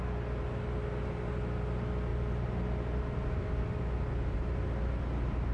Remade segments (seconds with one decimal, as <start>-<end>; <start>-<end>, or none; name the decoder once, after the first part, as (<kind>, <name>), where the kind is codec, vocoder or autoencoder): none

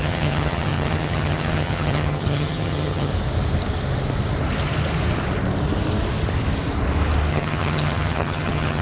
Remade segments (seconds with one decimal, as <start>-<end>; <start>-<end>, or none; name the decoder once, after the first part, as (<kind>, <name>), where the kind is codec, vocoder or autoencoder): 0.0-3.1 (vocoder, HiFi-GAN); 7.3-8.8

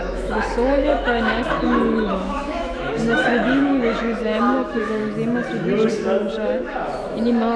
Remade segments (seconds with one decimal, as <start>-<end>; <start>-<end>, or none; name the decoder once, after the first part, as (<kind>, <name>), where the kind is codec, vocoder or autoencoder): 0.0-5.0 (autoencoder, DAC-VAE); 5.9-7.6

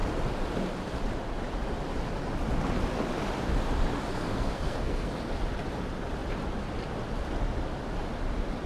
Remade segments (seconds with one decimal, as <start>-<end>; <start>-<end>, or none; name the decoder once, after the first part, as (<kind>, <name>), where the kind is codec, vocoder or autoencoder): 4.1-5.2 (codec, SNAC)